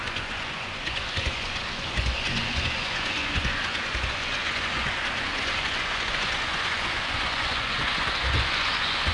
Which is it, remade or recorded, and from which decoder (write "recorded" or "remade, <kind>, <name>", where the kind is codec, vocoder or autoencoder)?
remade, vocoder, Vocos